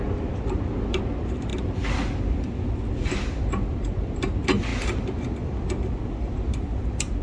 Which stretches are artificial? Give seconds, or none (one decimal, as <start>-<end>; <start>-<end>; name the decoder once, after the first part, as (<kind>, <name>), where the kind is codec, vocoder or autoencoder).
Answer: none